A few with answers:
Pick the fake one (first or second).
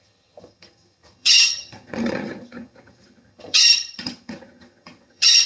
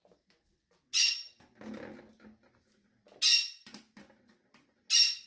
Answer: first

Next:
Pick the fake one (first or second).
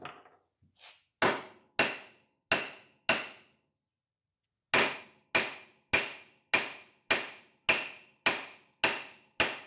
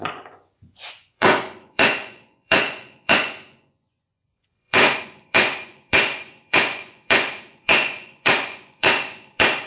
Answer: second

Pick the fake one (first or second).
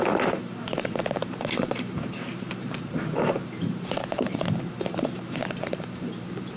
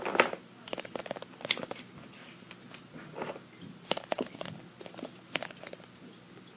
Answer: first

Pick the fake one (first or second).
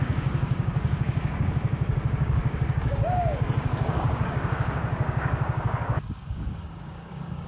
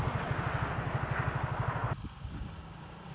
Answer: first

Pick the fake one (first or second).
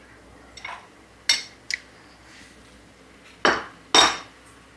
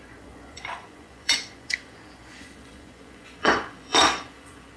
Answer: second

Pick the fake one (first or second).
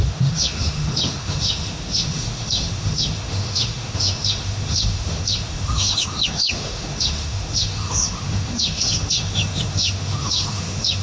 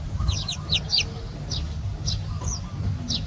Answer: first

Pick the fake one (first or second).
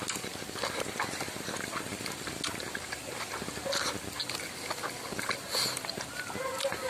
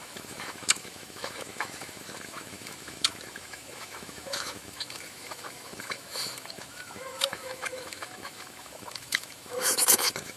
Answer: second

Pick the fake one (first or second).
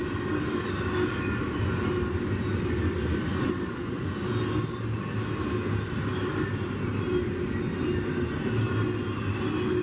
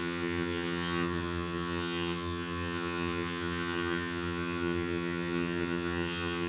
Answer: second